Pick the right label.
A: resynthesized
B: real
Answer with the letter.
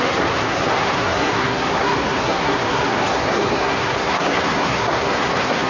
A